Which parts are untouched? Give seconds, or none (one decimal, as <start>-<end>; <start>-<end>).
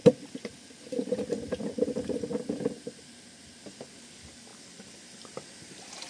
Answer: 0.0-6.1